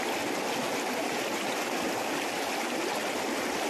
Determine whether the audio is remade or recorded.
recorded